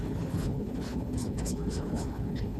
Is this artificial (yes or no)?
yes